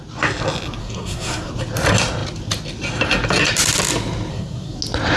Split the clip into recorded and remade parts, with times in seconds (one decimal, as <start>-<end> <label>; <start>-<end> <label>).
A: 0.0-0.8 recorded; 0.8-1.5 remade; 1.5-4.3 recorded; 4.3-4.8 remade; 4.8-5.2 recorded